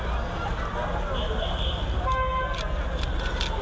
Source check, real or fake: real